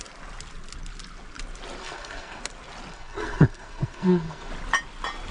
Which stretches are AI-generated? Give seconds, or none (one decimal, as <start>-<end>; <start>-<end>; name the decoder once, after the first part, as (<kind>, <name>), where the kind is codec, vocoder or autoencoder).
1.8-2.4 (codec, SNAC); 2.9-4.5